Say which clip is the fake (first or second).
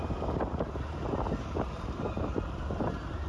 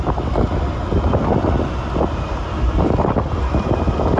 first